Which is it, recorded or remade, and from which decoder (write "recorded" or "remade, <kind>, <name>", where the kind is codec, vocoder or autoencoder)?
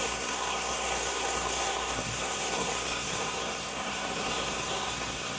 remade, codec, SNAC